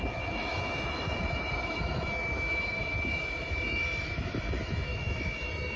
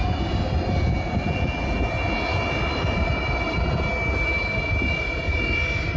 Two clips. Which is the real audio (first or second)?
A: second